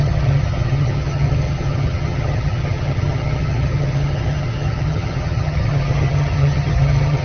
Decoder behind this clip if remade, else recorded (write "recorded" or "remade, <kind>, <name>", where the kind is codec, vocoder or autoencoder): remade, vocoder, HiFi-GAN